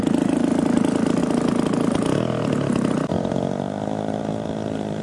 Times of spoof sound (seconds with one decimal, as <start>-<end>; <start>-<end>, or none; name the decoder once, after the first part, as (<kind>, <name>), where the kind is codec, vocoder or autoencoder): none